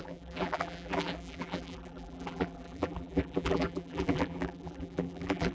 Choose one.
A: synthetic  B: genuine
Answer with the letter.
A